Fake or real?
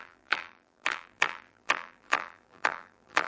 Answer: fake